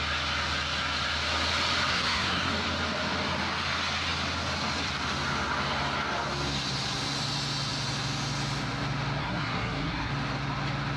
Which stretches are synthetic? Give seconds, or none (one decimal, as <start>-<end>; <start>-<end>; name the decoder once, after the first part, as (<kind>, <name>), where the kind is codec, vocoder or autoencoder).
1.9-2.5 (codec, SNAC); 9.2-10.1